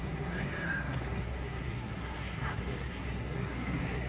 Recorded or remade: remade